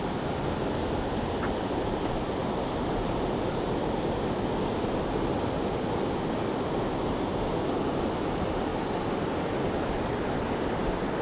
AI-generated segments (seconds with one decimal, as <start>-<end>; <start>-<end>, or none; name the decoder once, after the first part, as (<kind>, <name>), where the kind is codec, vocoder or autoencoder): none